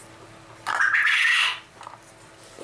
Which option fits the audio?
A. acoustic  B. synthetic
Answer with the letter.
A